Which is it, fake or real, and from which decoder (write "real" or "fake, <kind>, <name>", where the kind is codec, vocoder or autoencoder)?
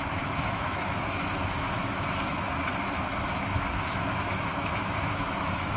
fake, autoencoder, DAC-VAE